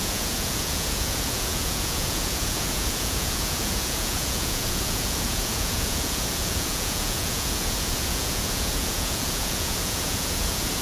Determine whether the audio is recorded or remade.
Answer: remade